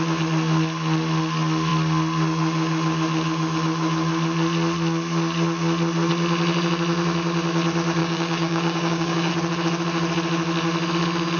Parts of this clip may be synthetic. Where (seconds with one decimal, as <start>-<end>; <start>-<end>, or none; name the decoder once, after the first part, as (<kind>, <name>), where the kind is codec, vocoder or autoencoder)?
8.0-9.3 (codec, DAC)